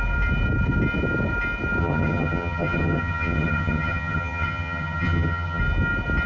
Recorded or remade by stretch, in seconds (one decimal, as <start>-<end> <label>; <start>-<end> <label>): 0.0-1.8 recorded; 1.8-5.6 remade; 5.6-6.3 recorded